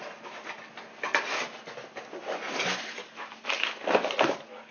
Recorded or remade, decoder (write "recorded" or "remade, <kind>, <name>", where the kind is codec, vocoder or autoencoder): recorded